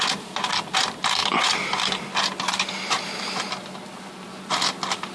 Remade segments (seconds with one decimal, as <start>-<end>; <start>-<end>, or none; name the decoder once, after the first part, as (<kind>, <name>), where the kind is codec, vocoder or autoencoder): none